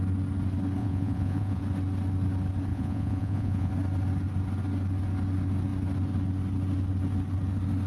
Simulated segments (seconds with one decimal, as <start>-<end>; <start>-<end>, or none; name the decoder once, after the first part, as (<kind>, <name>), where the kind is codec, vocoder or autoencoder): 0.8-1.6 (vocoder, Vocos); 2.7-3.7